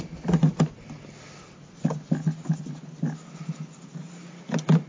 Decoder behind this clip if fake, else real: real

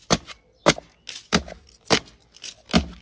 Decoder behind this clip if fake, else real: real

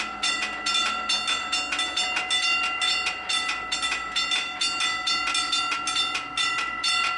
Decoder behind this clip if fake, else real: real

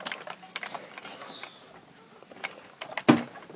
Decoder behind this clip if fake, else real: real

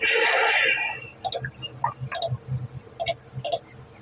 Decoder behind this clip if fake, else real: real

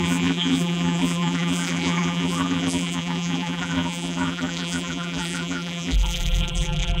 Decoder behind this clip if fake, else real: fake, vocoder, BigVGAN v2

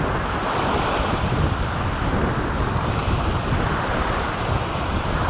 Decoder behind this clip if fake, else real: real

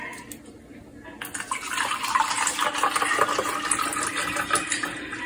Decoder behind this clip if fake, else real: real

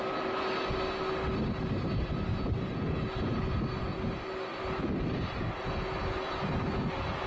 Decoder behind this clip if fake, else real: real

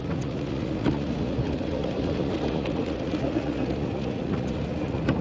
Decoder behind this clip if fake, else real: fake, vocoder, Vocos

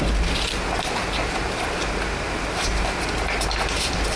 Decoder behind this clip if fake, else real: real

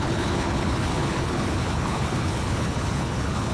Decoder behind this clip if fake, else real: fake, codec, HILCodec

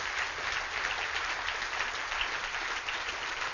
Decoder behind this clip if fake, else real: real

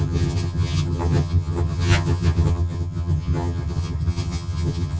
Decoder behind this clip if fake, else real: fake, vocoder, HiFi-GAN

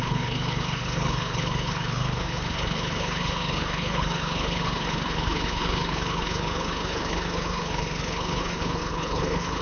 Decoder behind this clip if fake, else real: fake, codec, HILCodec